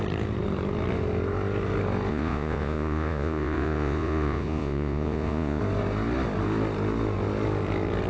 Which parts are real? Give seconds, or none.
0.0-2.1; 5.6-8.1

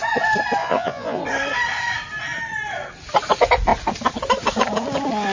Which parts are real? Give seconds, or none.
0.0-0.6; 1.2-5.3

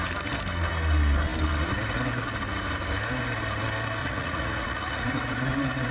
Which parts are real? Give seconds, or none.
0.0-4.0; 5.2-5.9

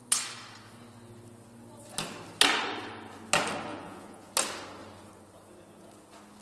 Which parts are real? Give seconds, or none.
0.0-3.7; 4.3-6.4

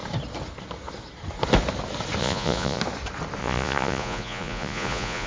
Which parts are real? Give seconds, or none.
0.0-2.2; 2.8-3.4

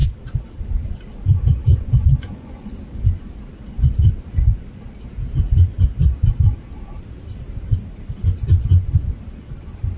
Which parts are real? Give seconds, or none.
0.0-1.7; 2.7-10.0

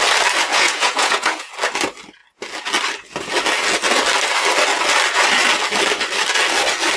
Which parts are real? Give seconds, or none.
0.0-0.5; 1.5-7.0

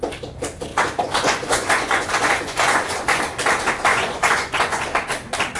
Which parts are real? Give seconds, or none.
0.0-0.7; 3.2-3.9; 4.8-5.6